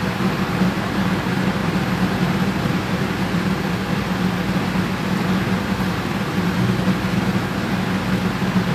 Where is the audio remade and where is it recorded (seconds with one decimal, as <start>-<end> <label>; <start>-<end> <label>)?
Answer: 0.0-1.6 recorded; 1.6-3.7 remade; 3.7-8.7 recorded